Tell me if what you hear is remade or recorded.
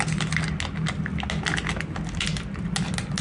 recorded